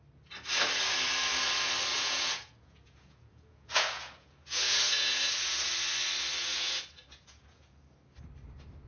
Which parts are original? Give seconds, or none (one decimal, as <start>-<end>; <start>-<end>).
0.0-1.9; 5.7-6.4; 7.8-8.9